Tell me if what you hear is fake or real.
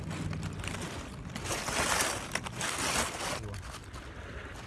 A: real